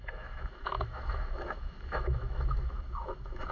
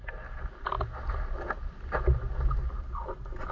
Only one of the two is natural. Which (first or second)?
second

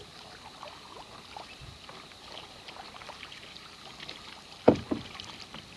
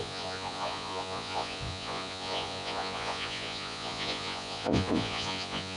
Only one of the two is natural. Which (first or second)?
first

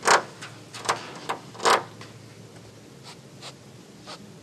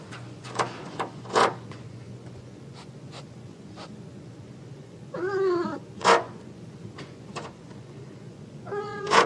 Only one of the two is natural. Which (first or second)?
first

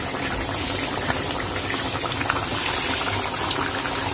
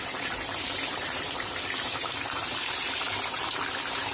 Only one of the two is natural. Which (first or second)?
first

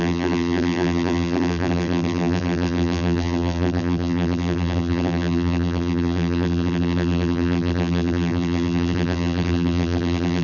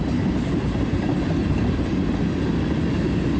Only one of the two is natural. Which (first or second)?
second